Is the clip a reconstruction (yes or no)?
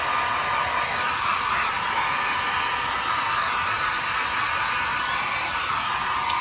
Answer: no